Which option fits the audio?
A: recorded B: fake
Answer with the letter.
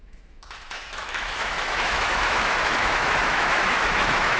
B